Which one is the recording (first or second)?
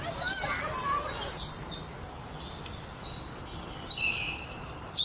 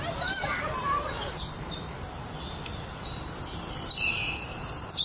first